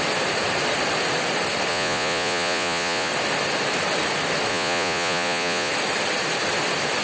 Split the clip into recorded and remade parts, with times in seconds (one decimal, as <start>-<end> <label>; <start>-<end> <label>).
0.0-1.7 recorded; 1.7-3.1 remade; 3.1-4.5 recorded; 4.5-5.7 remade; 5.7-7.0 recorded